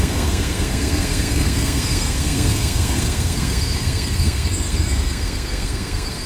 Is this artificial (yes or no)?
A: yes